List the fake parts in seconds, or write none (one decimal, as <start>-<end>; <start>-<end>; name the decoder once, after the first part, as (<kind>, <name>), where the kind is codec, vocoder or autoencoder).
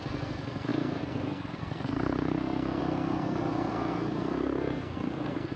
0.0-5.6 (codec, SNAC)